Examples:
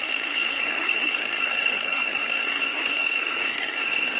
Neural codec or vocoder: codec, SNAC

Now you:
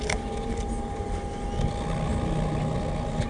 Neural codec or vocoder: none